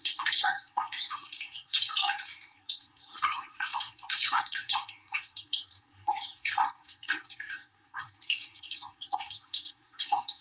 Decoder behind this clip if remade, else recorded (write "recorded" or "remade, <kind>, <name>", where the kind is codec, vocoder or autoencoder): remade, codec, SNAC